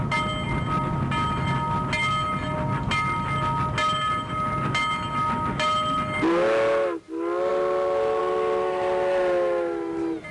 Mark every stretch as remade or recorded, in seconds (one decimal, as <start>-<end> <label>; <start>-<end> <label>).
0.0-10.3 recorded